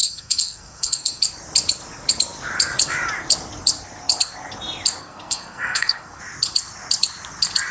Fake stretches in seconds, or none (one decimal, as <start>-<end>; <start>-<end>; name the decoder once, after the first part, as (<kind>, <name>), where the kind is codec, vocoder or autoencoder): 0.0-1.2 (codec, SNAC); 5.0-6.2